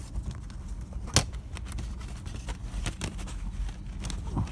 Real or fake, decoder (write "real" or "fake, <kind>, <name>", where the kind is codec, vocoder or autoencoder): real